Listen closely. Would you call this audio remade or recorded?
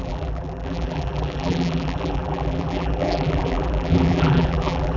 remade